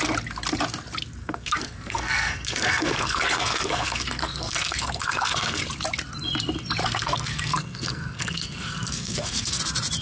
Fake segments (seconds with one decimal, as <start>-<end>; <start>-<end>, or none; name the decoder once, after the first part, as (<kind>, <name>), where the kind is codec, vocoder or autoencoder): 1.2-5.6 (codec, SNAC); 6.8-9.6